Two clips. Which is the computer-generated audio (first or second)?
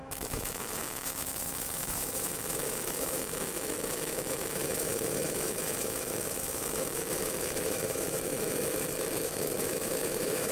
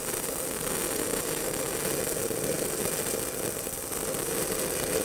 first